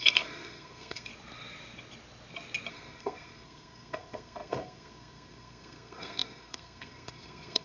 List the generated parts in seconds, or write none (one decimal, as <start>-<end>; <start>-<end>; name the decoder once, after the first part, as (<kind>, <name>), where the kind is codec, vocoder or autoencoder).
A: 0.0-1.1 (codec, SNAC); 2.7-7.6